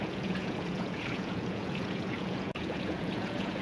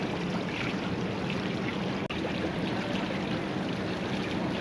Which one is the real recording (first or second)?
second